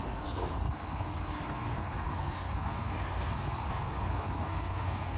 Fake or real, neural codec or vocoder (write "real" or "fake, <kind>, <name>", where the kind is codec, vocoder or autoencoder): fake, codec, SNAC